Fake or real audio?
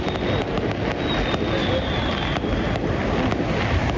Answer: real